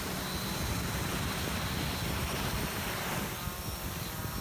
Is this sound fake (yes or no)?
yes